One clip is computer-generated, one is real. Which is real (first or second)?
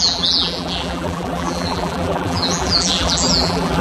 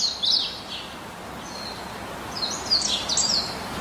second